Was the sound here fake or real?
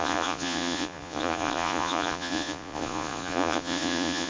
fake